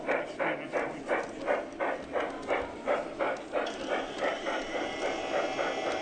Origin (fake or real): real